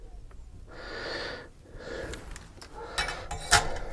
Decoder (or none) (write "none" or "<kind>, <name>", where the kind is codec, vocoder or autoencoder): none